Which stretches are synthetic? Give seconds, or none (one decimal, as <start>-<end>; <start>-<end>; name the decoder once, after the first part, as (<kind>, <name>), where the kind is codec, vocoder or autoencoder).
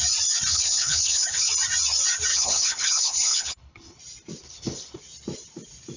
0.5-1.5 (codec, HILCodec); 2.3-4.0; 4.4-5.0